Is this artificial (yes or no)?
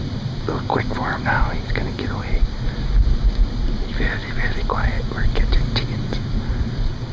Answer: no